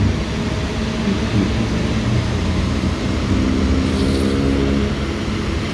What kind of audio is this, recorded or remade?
recorded